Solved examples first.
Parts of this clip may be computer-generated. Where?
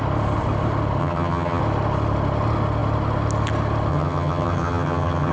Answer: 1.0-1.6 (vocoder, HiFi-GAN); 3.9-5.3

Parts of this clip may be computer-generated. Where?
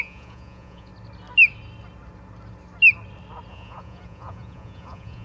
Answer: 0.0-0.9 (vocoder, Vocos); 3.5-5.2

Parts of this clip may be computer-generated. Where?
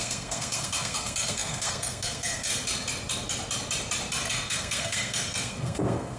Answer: 0.0-2.5 (codec, SNAC); 4.3-6.2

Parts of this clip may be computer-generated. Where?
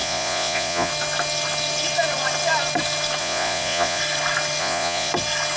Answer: 0.0-0.9 (vocoder, Vocos); 3.2-4.0; 4.6-5.1